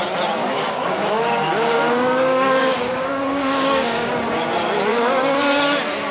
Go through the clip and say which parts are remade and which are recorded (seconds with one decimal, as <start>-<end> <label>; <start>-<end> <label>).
0.0-0.4 recorded; 0.4-4.1 remade; 4.1-4.9 recorded; 4.9-5.5 remade; 5.5-6.1 recorded

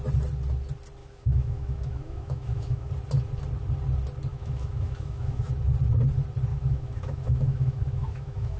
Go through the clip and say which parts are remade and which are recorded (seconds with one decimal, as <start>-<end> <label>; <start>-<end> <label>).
0.0-1.0 recorded; 1.0-2.9 remade; 2.9-4.3 recorded; 4.3-5.5 remade; 5.5-6.5 recorded; 6.5-8.6 remade

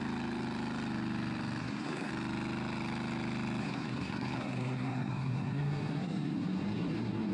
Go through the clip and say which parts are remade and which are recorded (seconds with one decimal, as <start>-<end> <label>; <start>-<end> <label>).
0.0-1.6 recorded; 1.6-2.1 remade; 2.1-3.6 recorded; 3.6-7.3 remade

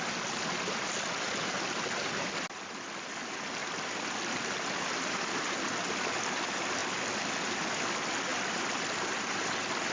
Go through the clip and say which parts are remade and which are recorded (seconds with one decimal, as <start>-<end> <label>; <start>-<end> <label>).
0.0-3.6 recorded; 3.6-6.2 remade; 6.2-9.9 recorded

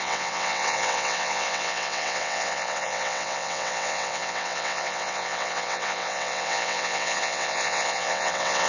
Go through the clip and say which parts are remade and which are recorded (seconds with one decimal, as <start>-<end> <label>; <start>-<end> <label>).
0.0-8.7 remade

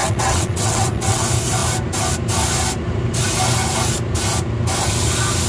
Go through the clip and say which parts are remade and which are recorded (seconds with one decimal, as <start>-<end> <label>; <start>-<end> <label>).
0.0-1.2 remade; 1.2-5.5 recorded